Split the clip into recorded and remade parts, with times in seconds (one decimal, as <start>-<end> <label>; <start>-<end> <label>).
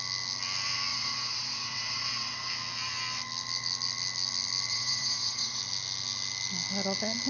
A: 0.0-0.9 recorded; 0.9-2.5 remade; 2.5-4.7 recorded; 4.7-5.6 remade; 5.6-7.3 recorded